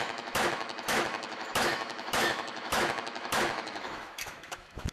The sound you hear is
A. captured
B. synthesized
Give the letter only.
B